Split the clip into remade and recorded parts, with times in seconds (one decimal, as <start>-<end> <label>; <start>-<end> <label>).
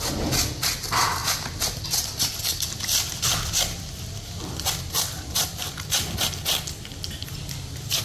0.0-8.0 recorded